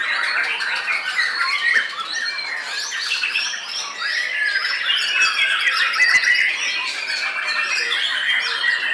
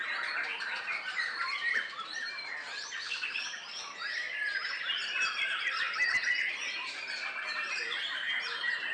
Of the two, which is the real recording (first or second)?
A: first